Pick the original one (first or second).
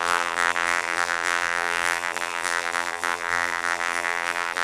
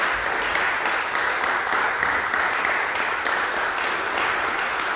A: second